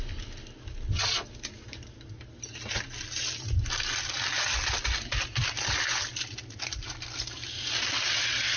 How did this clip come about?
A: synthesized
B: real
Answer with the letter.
B